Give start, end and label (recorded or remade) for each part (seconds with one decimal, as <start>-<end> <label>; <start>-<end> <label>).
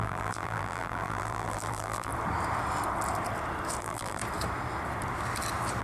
0.0-2.1 remade; 2.1-3.8 recorded; 3.8-4.2 remade; 4.2-5.8 recorded